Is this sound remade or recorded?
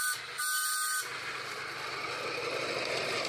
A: recorded